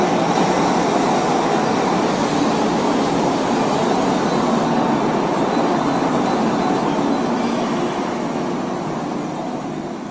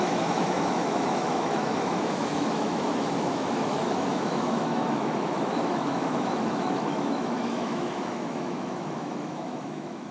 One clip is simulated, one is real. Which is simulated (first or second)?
second